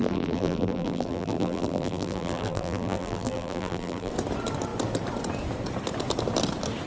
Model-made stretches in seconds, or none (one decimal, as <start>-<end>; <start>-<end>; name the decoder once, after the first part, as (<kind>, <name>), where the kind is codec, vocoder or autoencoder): 0.0-4.1 (vocoder, BigVGAN v2)